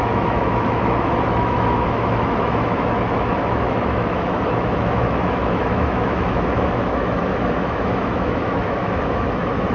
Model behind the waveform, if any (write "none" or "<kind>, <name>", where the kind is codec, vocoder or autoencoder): autoencoder, DAC-VAE